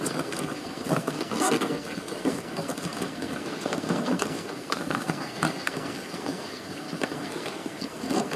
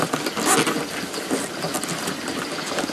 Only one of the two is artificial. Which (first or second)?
first